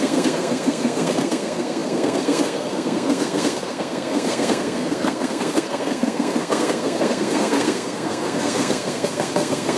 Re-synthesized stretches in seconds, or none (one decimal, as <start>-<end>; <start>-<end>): 0.0-9.8